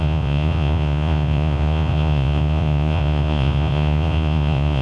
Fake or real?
fake